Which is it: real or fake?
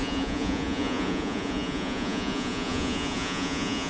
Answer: fake